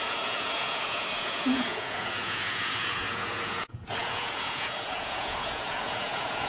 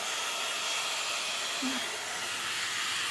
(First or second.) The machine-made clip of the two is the first